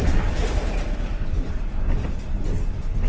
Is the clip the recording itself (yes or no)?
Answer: yes